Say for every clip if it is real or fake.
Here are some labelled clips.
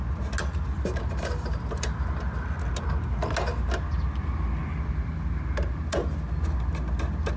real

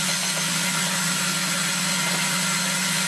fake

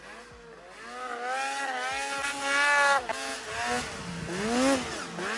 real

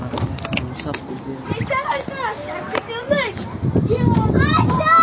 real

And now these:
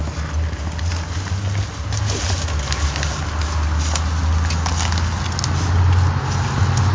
real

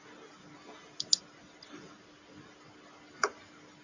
real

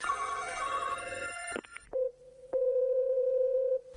fake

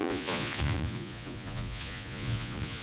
fake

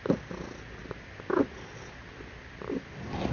real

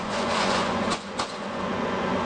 fake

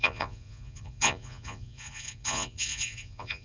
fake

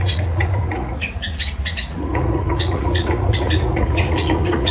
fake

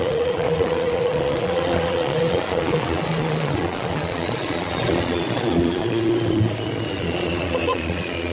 fake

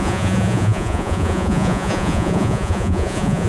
fake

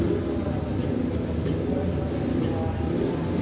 real